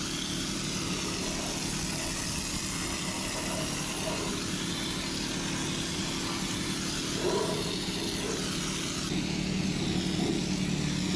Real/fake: real